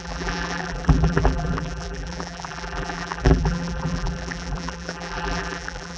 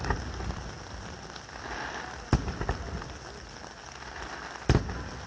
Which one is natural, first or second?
second